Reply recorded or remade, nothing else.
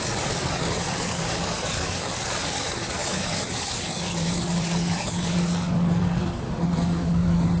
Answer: remade